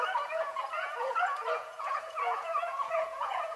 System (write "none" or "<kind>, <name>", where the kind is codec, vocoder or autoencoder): vocoder, Vocos